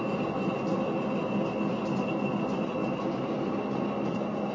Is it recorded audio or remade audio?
recorded